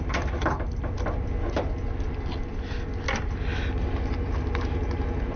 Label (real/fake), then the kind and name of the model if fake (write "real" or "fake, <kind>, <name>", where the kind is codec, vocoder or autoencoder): real